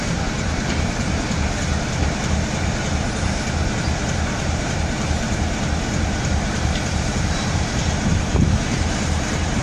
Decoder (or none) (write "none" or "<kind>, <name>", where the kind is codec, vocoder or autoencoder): vocoder, BigVGAN v2